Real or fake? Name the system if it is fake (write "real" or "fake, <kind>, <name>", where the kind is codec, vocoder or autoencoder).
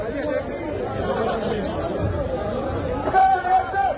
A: fake, vocoder, BigVGAN v2